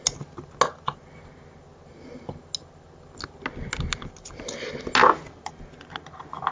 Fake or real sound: real